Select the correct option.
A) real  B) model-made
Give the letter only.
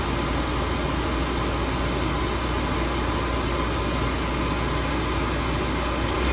A